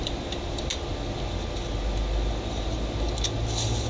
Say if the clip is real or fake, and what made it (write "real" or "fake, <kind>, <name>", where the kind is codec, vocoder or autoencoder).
real